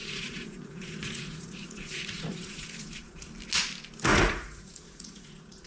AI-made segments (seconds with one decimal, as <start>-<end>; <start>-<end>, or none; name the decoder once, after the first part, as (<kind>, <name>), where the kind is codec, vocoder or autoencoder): 0.0-3.3 (vocoder, Vocos); 4.1-5.7